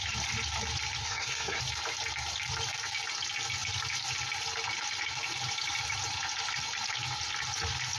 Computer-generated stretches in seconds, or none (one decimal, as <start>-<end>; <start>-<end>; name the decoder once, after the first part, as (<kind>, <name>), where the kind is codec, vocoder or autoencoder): 1.0-1.6 (codec, SNAC)